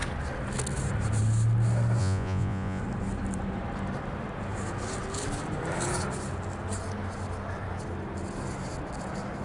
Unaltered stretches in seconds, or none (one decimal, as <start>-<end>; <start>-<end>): 0.0-2.0; 2.8-9.4